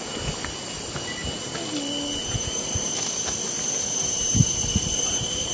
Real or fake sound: real